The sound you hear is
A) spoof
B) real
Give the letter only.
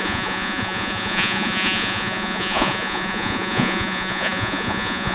A